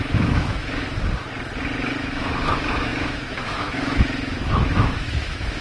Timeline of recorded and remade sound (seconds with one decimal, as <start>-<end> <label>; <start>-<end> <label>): 0.0-0.8 remade; 0.8-2.0 recorded; 2.0-5.6 remade

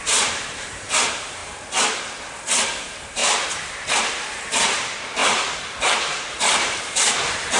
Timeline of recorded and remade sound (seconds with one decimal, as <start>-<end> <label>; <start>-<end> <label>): 0.0-1.4 remade; 1.4-2.8 recorded; 2.8-3.2 remade; 3.2-4.0 recorded; 4.0-7.6 remade

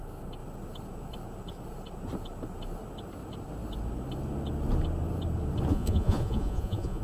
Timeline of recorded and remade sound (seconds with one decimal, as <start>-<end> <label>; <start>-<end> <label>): 0.0-5.7 recorded; 5.7-7.0 remade

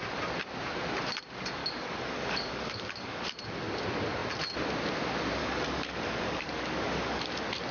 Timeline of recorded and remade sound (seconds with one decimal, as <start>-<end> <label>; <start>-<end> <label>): 0.0-1.6 recorded; 1.6-3.2 remade; 3.2-5.4 recorded; 5.4-7.2 remade; 7.2-7.7 recorded

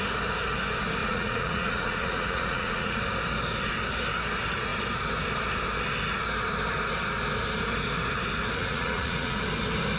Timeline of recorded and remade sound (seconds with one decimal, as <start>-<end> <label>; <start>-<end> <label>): 0.0-1.0 recorded; 1.0-3.0 remade; 3.0-8.6 recorded; 8.6-9.4 remade; 9.4-10.0 recorded

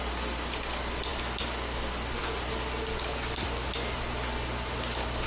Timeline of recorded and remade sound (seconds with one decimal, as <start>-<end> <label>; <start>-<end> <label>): 0.0-5.3 recorded

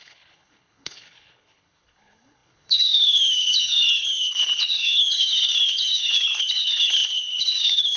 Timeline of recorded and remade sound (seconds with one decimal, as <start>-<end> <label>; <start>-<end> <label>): 0.0-8.0 remade